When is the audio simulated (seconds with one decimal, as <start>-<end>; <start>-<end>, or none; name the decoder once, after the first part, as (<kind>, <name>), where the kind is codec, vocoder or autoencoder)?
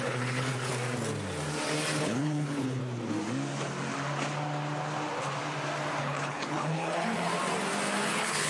0.0-0.7 (codec, HILCodec); 2.0-2.8; 6.0-7.3; 8.1-8.5